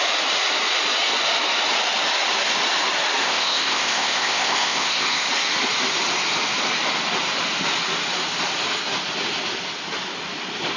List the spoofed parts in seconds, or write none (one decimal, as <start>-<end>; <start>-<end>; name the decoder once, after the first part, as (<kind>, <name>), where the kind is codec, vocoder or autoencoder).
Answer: 3.2-5.3 (codec, ZipCodec)